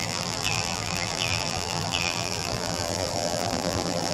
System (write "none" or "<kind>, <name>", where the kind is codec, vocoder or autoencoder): vocoder, BigVGAN v2